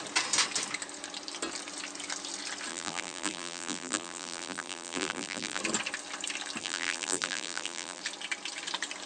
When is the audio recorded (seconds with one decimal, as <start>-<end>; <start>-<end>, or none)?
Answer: 0.0-2.7; 5.6-6.6; 8.0-9.1